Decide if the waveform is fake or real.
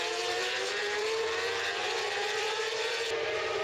fake